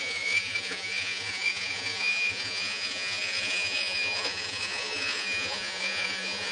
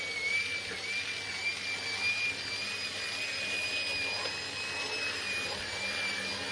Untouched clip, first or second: second